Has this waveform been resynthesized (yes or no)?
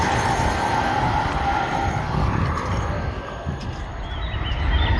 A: no